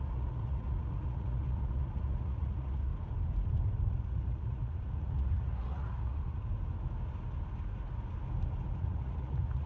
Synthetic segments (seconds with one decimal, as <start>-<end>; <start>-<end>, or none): 0.0-2.9; 4.0-6.4; 8.8-9.7